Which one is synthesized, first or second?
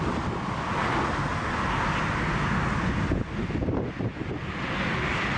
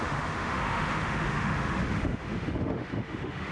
second